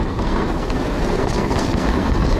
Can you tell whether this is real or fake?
fake